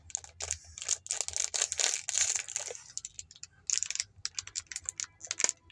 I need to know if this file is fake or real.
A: real